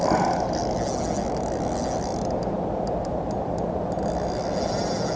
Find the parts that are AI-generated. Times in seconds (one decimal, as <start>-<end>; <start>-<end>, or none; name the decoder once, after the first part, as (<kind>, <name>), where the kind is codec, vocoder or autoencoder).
none